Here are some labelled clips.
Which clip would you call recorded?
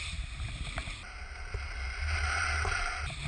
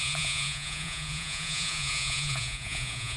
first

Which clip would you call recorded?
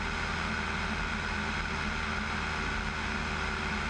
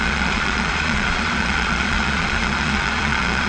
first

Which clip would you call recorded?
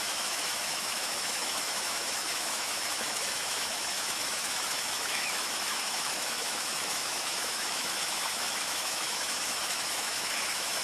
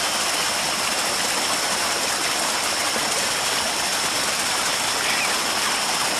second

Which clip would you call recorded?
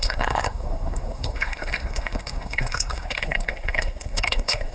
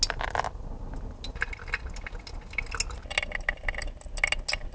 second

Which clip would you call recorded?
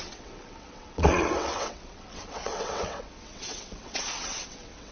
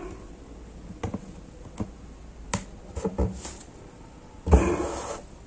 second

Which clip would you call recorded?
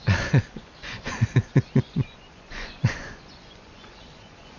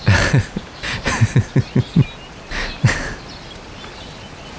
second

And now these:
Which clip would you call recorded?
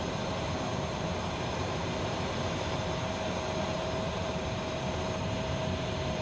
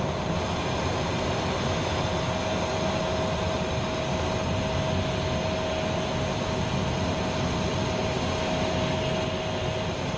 second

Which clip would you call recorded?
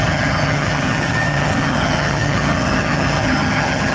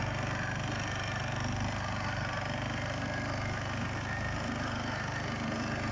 second